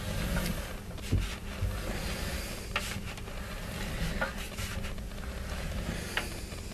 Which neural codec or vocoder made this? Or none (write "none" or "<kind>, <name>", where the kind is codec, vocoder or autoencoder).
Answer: none